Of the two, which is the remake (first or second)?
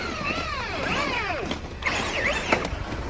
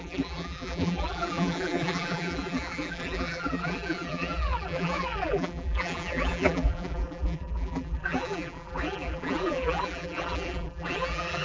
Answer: second